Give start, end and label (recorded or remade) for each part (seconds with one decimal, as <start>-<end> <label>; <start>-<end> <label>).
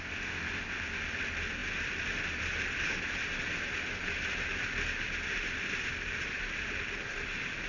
0.0-7.7 recorded